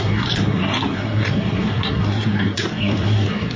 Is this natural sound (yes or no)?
no